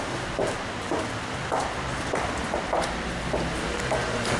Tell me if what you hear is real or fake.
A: real